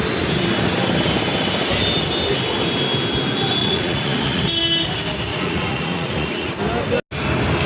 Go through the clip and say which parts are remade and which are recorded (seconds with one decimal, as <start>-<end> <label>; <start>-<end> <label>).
0.0-3.6 recorded; 3.6-4.4 remade; 4.4-5.3 recorded; 5.3-6.5 remade; 6.5-7.7 recorded